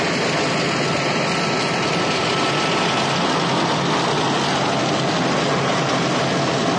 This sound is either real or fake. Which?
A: real